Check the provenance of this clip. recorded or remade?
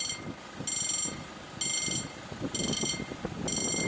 recorded